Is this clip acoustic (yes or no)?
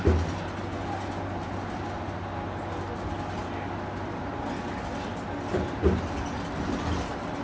yes